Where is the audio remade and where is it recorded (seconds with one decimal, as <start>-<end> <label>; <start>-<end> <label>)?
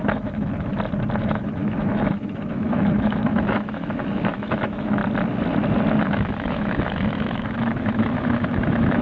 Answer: 0.0-0.7 remade; 0.7-1.2 recorded; 1.2-5.0 remade; 5.0-6.0 recorded; 6.0-9.0 remade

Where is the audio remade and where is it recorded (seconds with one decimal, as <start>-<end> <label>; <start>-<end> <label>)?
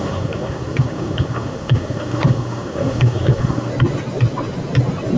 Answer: 0.0-3.7 remade; 3.7-5.2 recorded